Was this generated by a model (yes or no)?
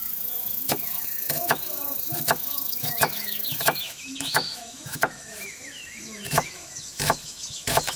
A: yes